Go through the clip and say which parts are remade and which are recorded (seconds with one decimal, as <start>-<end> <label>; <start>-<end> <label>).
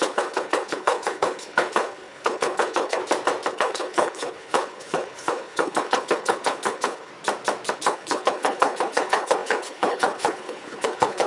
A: 0.0-3.0 remade; 3.0-3.5 recorded; 3.5-7.1 remade; 7.1-7.7 recorded; 7.7-11.3 remade